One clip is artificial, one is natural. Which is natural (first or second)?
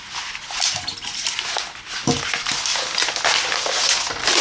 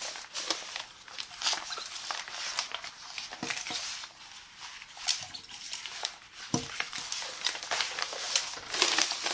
first